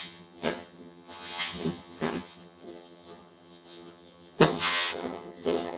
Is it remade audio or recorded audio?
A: remade